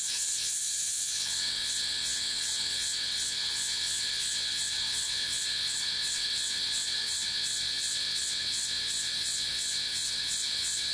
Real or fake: fake